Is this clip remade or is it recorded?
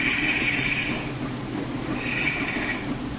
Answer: recorded